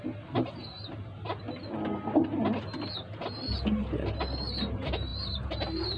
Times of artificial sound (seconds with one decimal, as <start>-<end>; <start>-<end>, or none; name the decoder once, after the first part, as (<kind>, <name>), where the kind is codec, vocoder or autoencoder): none